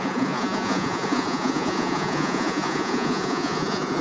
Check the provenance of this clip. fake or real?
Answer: fake